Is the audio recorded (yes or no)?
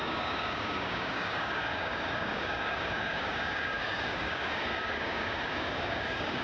no